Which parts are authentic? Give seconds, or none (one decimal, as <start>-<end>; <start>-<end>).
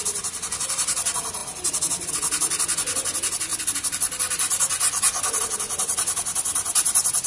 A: 0.0-7.3